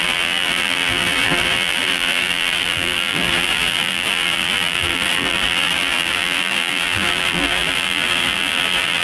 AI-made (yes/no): yes